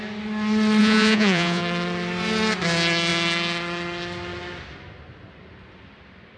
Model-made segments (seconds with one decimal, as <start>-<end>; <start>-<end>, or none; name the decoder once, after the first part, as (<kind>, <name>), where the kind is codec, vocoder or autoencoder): 0.8-1.6 (vocoder, Vocos)